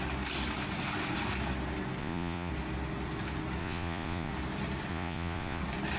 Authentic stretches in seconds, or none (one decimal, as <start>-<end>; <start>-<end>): 0.0-2.0; 2.5-3.6; 4.3-4.9; 5.6-6.0